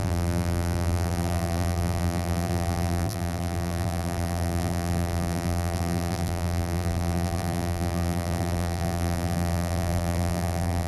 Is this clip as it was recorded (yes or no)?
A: no